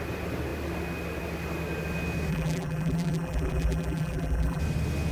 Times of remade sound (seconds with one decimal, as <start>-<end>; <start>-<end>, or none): 2.3-4.6